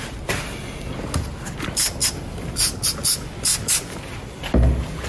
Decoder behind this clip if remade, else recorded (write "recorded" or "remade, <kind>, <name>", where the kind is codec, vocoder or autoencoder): recorded